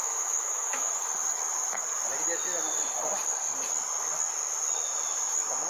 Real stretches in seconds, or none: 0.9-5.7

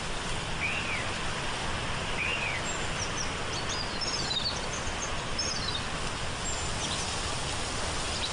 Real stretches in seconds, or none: 0.0-8.3